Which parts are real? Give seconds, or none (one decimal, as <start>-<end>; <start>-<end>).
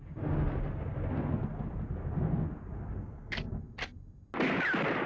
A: 0.0-3.0; 3.5-5.1